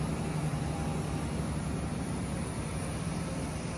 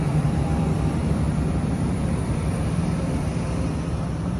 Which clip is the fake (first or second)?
second